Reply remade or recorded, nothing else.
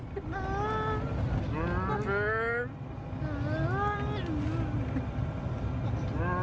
recorded